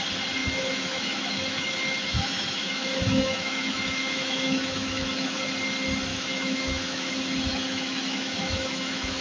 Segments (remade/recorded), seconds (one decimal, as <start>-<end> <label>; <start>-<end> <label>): 0.0-0.4 recorded; 0.4-5.4 remade; 5.4-6.1 recorded; 6.1-7.1 remade; 7.1-7.5 recorded; 7.5-9.2 remade